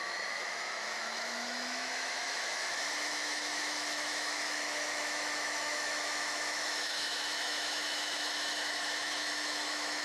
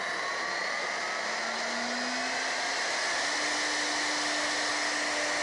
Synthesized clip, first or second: first